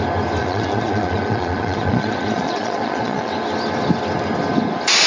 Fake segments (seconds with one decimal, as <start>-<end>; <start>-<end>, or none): 0.4-3.3